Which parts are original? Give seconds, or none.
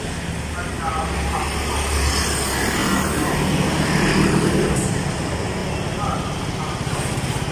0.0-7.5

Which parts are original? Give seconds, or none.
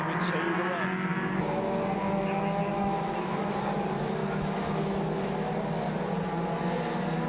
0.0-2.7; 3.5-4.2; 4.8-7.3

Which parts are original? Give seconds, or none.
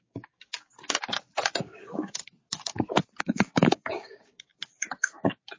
0.5-1.6; 2.2-3.2; 4.5-5.6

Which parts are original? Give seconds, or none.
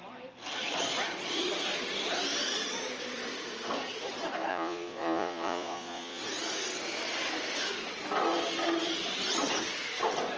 0.0-4.5; 6.2-10.4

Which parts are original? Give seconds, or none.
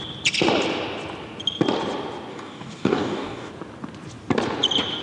0.0-2.3; 3.5-5.0